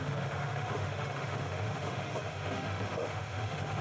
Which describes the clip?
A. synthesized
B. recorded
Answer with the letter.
A